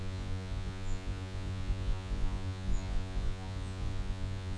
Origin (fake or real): fake